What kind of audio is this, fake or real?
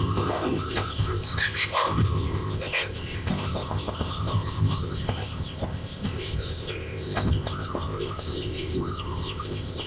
fake